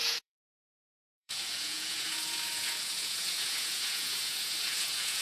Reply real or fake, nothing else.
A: fake